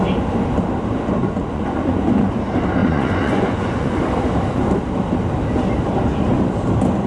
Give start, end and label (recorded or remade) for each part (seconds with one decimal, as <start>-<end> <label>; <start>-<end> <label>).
0.0-1.2 recorded; 1.2-2.3 remade; 2.3-2.8 recorded; 2.8-4.0 remade; 4.0-7.1 recorded